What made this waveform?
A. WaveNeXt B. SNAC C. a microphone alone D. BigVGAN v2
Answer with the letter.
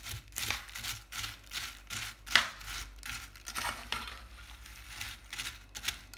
C